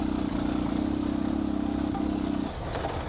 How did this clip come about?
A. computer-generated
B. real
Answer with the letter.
B